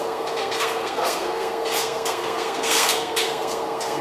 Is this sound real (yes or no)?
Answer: no